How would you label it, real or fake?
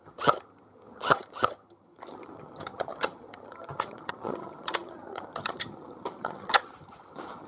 fake